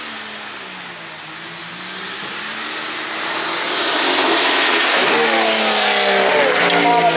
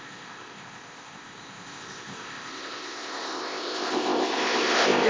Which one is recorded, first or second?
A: first